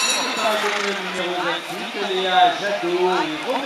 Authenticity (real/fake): real